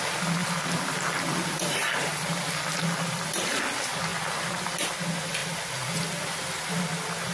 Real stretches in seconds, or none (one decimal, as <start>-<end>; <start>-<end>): 0.0-0.4; 3.6-5.4; 6.8-7.3